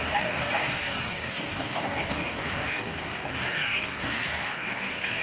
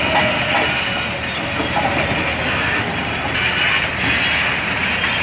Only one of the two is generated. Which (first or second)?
first